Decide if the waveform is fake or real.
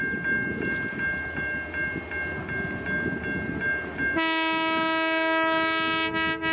real